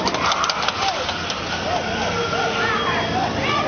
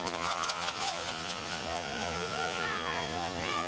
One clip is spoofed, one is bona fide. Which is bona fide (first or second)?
first